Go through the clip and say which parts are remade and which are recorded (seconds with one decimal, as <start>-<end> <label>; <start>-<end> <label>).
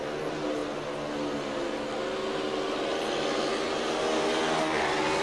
0.0-5.2 recorded